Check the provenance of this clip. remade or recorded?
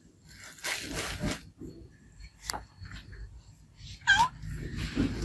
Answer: recorded